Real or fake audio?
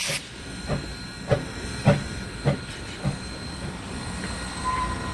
real